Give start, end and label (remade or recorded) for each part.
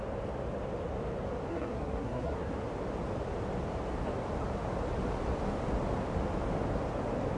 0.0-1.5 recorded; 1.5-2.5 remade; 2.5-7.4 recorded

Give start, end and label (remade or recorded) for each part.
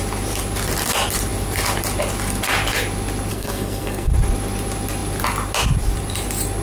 0.0-3.3 recorded; 3.3-4.1 remade; 4.1-6.6 recorded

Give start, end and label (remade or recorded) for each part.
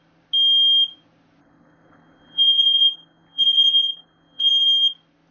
0.0-1.4 recorded; 1.4-4.5 remade; 4.5-5.3 recorded